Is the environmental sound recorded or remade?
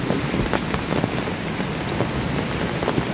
recorded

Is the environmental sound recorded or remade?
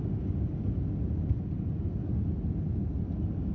recorded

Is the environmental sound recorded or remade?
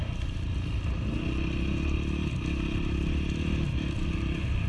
recorded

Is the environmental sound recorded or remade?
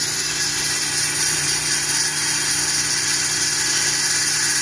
recorded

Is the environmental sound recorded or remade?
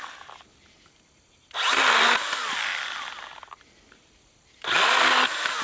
recorded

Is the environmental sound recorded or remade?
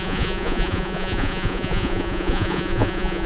remade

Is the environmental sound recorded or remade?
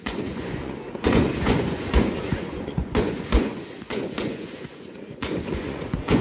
remade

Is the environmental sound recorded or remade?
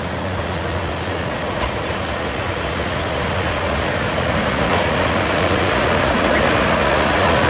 remade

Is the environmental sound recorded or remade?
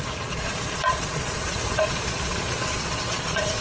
remade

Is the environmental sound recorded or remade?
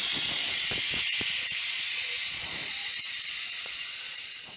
remade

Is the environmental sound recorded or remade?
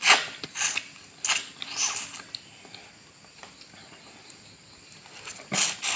recorded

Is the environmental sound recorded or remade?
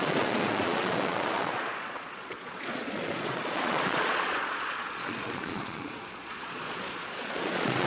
remade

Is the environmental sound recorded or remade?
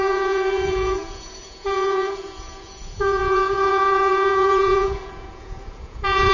remade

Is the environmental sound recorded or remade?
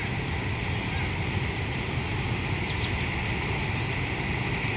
recorded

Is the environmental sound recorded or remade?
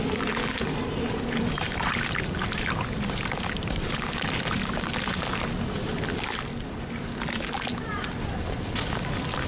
recorded